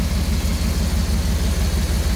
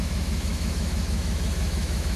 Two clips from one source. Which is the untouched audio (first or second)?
first